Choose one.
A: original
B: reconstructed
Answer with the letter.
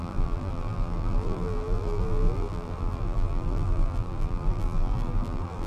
B